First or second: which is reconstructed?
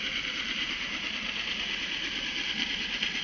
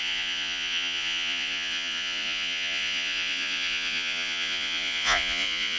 second